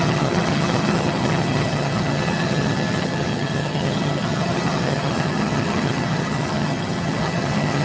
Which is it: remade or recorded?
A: remade